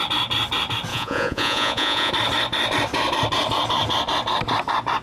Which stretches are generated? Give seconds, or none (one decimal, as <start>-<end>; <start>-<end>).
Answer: 0.9-2.1